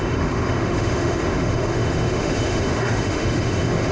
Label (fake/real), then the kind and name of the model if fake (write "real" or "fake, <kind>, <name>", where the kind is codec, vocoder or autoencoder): fake, autoencoder, DAC-VAE